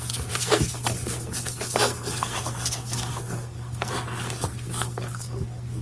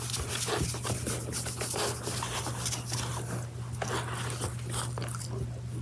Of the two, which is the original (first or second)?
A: second